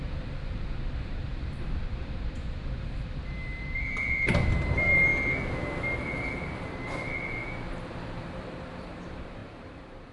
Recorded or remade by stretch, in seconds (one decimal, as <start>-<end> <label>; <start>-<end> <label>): 0.0-5.1 remade; 5.1-7.9 recorded; 7.9-10.1 remade